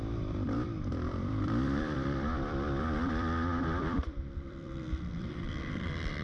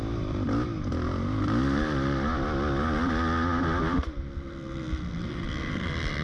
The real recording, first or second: second